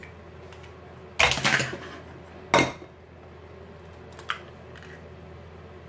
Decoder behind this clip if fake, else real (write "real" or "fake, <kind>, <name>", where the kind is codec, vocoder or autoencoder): real